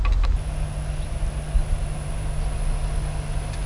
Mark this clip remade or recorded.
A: recorded